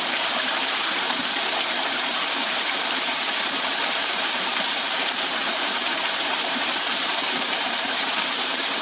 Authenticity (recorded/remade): remade